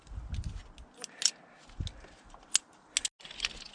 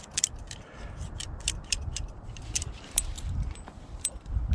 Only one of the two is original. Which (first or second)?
first